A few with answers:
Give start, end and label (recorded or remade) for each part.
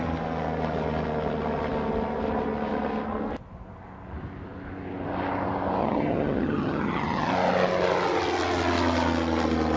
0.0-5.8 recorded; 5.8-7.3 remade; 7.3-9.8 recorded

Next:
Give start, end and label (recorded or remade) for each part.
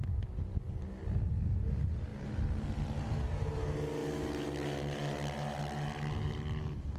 0.0-7.0 recorded